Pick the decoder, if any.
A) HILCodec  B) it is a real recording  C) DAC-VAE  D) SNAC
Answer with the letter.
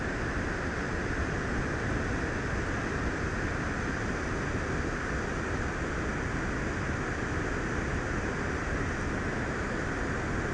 B